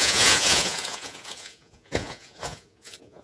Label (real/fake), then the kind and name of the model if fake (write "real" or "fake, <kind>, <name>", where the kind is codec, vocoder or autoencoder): fake, vocoder, Vocos